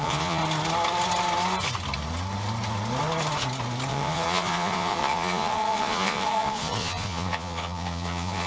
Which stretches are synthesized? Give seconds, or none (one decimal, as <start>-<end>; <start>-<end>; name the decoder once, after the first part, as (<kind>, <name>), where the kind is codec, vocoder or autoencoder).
0.0-0.4 (vocoder, Vocos); 3.9-8.5